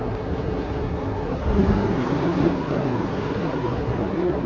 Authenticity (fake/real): fake